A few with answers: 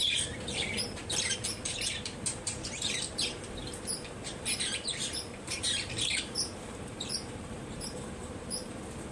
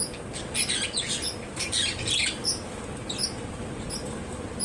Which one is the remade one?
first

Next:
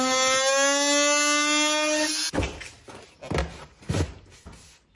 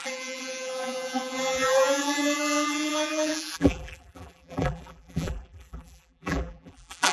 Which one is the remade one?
second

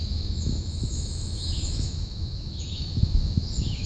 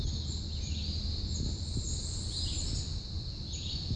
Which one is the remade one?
first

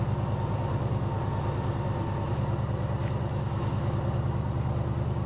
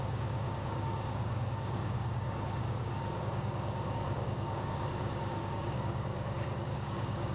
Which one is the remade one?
second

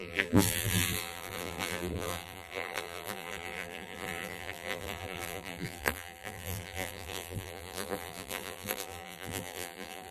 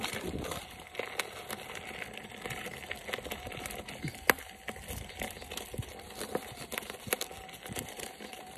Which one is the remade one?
first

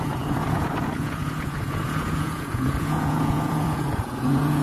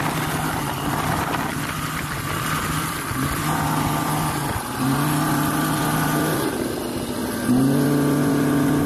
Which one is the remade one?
first